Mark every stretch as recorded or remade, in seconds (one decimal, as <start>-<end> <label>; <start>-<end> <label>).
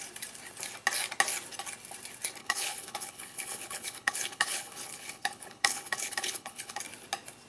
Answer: 0.0-2.4 recorded; 2.4-6.8 remade; 6.8-7.5 recorded